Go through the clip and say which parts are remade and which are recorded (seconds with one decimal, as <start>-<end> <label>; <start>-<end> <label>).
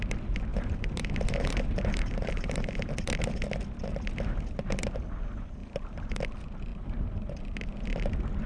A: 0.0-0.5 recorded; 0.5-2.9 remade; 2.9-5.6 recorded; 5.6-6.2 remade; 6.2-6.7 recorded; 6.7-7.4 remade; 7.4-8.5 recorded